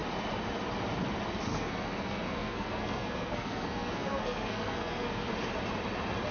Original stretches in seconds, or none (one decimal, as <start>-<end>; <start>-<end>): 0.0-1.5; 5.3-6.3